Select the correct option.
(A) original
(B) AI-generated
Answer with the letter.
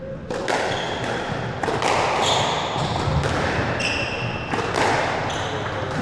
A